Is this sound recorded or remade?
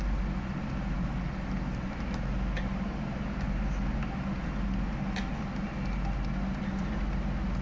recorded